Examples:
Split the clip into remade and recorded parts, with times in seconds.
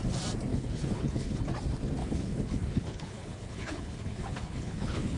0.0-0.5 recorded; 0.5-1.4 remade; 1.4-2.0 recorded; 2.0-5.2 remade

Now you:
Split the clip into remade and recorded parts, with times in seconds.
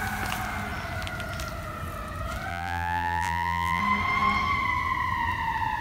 0.0-2.5 recorded; 2.5-3.8 remade; 3.8-5.8 recorded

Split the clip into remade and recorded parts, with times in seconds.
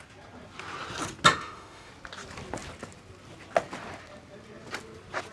0.0-1.3 recorded; 1.3-1.9 remade; 1.9-5.3 recorded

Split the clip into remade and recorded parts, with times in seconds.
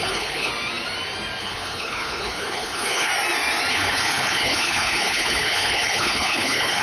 0.0-0.5 remade; 0.5-1.4 recorded; 1.4-3.1 remade; 3.1-3.7 recorded; 3.7-6.8 remade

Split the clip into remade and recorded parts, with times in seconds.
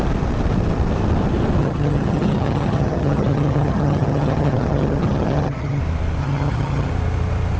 0.0-1.6 recorded; 1.6-5.8 remade; 5.8-6.2 recorded; 6.2-6.9 remade; 6.9-7.6 recorded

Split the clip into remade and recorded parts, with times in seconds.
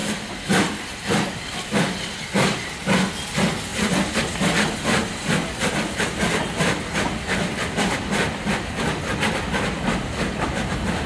0.0-11.1 recorded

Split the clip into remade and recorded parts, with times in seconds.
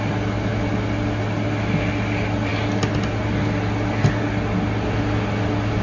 0.0-5.8 recorded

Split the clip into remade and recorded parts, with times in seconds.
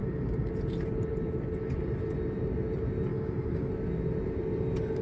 0.0-0.5 remade; 0.5-3.1 recorded; 3.1-3.7 remade; 3.7-5.0 recorded